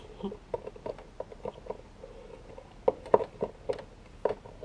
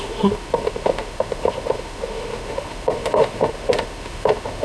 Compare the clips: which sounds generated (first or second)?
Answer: second